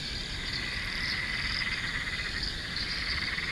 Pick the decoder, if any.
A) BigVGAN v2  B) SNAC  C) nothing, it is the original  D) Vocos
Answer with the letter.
A